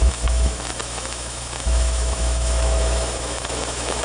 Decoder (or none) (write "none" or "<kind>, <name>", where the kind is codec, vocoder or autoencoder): autoencoder, DAC-VAE